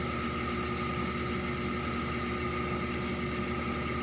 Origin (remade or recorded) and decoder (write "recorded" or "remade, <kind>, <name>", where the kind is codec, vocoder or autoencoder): recorded